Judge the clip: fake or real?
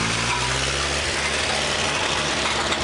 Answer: real